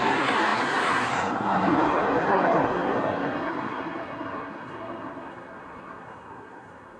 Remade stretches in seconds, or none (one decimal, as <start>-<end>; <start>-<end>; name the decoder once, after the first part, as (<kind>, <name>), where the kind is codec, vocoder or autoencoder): 0.0-7.0 (codec, SNAC)